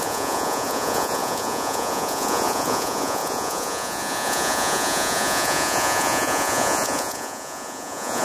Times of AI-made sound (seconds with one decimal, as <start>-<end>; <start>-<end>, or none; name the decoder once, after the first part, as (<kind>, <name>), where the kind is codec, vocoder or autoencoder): 0.0-8.2 (vocoder, Vocos)